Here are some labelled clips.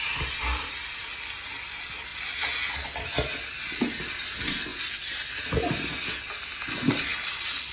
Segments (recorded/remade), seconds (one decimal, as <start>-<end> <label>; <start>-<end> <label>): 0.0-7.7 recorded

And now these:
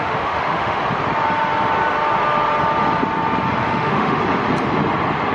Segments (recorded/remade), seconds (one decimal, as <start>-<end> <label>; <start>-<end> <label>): 0.0-0.8 remade; 0.8-3.6 recorded; 3.6-4.2 remade; 4.2-5.3 recorded

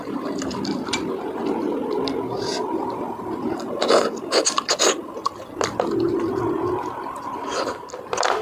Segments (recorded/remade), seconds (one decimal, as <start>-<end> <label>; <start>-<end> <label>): 0.0-8.4 recorded